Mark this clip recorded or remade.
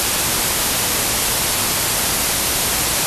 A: remade